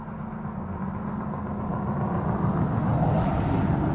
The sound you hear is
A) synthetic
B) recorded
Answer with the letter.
B